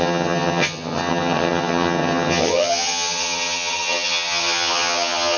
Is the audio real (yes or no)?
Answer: no